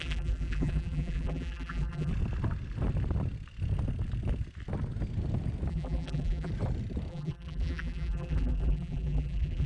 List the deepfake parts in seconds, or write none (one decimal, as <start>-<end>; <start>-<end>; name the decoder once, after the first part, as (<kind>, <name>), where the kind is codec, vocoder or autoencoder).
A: 0.0-2.1 (vocoder, BigVGAN v2); 5.7-6.5; 7.1-9.7